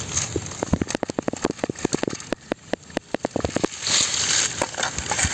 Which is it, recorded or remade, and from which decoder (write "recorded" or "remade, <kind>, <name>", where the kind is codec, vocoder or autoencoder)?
recorded